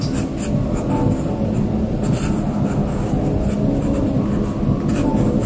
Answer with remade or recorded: recorded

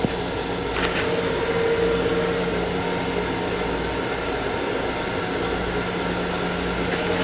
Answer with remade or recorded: recorded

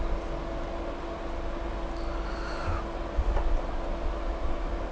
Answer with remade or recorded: recorded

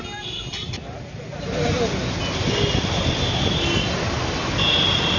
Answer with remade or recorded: recorded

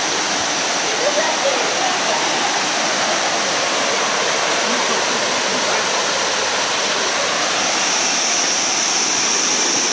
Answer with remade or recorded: recorded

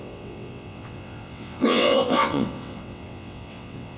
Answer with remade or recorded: remade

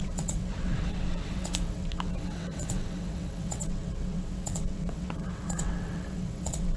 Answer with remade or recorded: remade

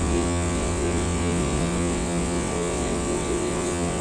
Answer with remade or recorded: remade